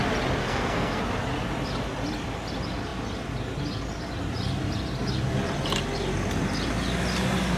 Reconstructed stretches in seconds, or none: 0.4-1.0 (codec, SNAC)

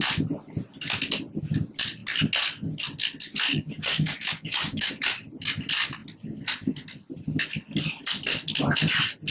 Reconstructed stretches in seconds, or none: 3.5-4.9 (codec, DAC)

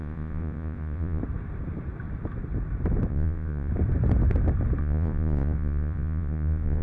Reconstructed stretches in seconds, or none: 0.0-1.2 (vocoder, Vocos); 3.1-3.7; 4.8-6.8